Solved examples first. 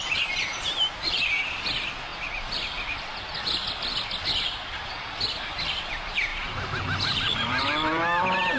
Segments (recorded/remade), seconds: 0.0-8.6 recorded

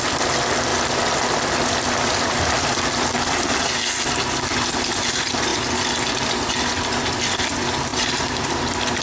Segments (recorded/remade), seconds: 0.0-7.9 recorded; 7.9-8.6 remade; 8.6-9.0 recorded

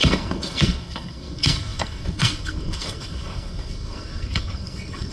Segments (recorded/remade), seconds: 0.0-5.1 remade

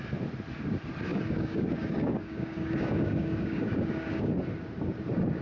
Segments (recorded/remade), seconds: 0.0-1.1 recorded; 1.1-4.3 remade; 4.3-5.4 recorded

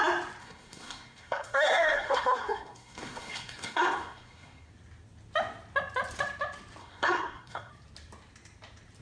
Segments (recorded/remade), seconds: 0.0-0.4 recorded; 0.4-4.7 remade; 4.7-6.8 recorded; 6.8-7.7 remade; 7.7-9.0 recorded

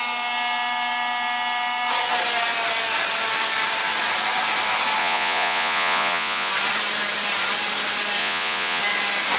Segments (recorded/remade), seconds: 0.0-5.0 recorded; 5.0-6.5 remade; 6.5-8.2 recorded; 8.2-8.8 remade; 8.8-9.4 recorded

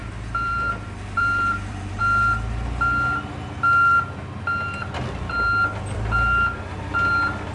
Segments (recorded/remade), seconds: 0.0-2.0 remade; 2.0-7.5 recorded

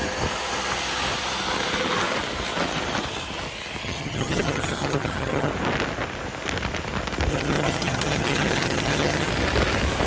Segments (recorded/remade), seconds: 0.0-3.8 recorded; 3.8-5.5 remade; 5.5-7.3 recorded; 7.3-9.3 remade; 9.3-10.1 recorded